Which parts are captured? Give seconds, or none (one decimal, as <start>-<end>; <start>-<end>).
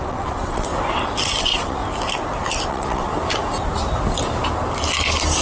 0.7-1.4; 1.8-2.7; 3.1-5.4